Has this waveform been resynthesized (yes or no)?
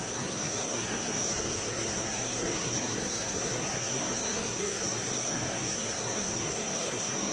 yes